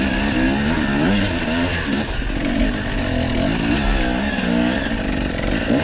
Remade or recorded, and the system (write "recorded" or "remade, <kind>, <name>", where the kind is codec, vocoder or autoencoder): recorded